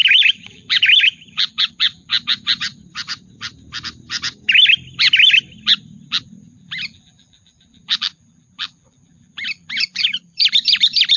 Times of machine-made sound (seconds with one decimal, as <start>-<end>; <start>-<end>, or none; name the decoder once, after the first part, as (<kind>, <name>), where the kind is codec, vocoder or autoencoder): 0.0-2.1 (vocoder, BigVGAN v2); 6.1-11.2